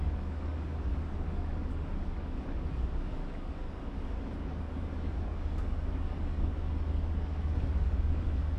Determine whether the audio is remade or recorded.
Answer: remade